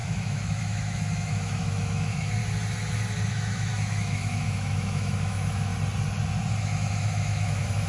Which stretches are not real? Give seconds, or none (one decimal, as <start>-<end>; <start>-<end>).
0.0-2.4; 3.3-5.7; 6.6-7.9